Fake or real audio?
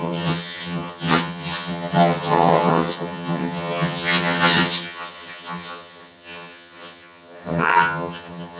fake